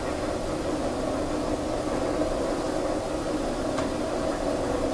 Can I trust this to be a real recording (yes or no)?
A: yes